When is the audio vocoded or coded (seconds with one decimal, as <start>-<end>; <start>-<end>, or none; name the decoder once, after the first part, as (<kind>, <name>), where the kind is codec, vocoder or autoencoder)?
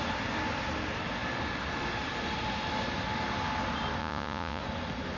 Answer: 4.0-4.6 (vocoder, Vocos)